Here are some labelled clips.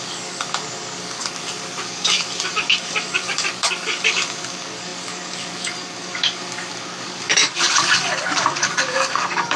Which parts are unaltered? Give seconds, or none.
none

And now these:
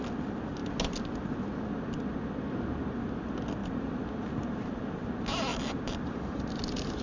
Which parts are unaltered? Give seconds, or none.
0.0-3.6; 5.0-5.5; 6.4-7.0